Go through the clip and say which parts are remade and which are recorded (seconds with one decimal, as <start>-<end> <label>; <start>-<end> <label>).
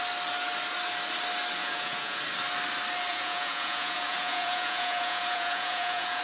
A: 0.0-1.6 recorded; 1.6-2.2 remade; 2.2-3.1 recorded; 3.1-6.2 remade